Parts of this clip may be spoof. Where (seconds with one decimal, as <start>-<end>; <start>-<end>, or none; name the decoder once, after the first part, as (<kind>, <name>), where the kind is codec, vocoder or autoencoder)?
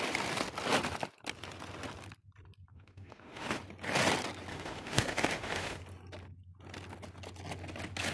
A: 2.7-3.6 (autoencoder, DAC-VAE); 4.5-5.8